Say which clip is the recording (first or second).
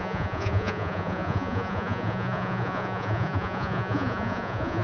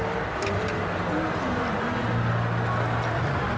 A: second